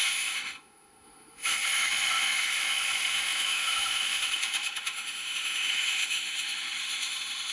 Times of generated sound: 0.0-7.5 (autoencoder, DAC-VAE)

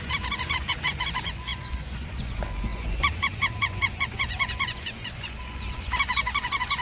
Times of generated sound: 0.0-6.8 (vocoder, Vocos)

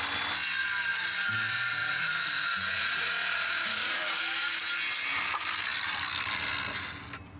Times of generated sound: 1.8-4.0 (vocoder, Vocos)